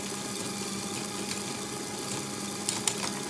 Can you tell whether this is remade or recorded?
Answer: recorded